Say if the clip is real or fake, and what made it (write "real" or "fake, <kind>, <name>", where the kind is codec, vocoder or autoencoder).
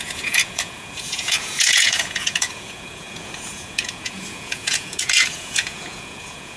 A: fake, vocoder, Vocos